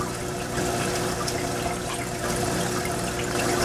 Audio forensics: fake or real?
real